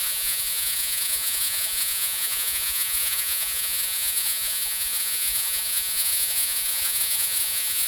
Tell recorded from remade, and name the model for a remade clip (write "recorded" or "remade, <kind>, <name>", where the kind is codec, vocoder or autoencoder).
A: remade, vocoder, Vocos